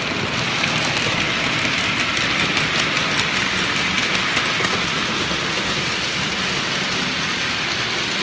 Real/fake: real